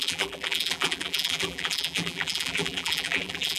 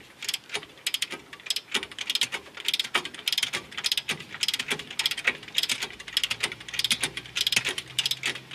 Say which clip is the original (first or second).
second